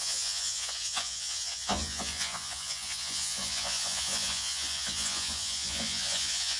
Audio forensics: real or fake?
fake